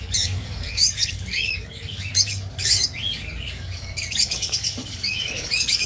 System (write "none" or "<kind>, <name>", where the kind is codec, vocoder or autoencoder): codec, DAC